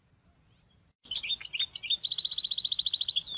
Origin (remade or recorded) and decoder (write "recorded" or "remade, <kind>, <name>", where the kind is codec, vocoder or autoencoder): recorded